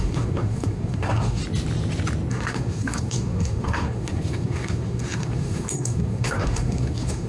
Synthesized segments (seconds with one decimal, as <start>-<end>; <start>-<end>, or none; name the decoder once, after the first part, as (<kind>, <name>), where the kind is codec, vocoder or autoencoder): 0.0-1.4 (codec, SNAC); 2.3-7.3